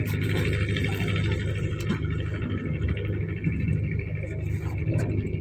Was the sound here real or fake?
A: real